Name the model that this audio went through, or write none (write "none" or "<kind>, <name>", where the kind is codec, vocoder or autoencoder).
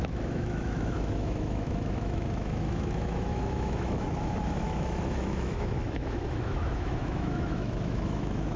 autoencoder, DAC-VAE